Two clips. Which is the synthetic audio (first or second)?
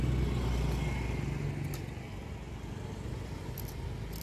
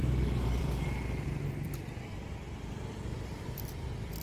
second